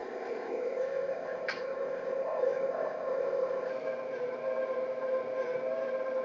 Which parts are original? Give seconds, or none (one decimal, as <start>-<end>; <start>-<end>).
3.7-6.2